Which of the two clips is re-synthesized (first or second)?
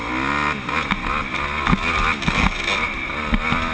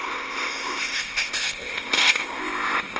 second